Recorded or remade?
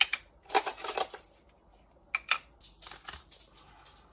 recorded